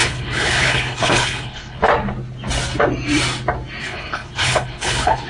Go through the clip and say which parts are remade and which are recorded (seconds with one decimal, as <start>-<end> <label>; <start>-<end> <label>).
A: 0.0-1.8 remade; 1.8-3.8 recorded; 3.8-5.3 remade

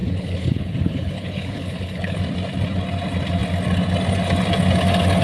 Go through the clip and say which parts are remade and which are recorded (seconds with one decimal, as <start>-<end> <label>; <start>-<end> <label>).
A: 0.0-2.2 remade; 2.2-5.2 recorded